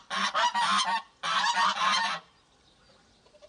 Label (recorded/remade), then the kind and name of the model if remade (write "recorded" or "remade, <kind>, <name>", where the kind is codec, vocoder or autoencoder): recorded